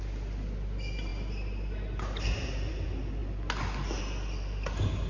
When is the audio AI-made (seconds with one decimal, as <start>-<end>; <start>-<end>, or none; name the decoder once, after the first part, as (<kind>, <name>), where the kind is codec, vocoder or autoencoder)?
none